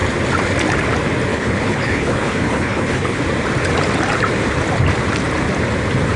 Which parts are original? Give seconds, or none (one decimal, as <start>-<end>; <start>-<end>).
0.0-1.3; 3.2-6.2